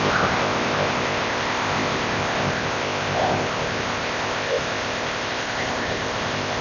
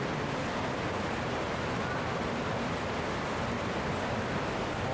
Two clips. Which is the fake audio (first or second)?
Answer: first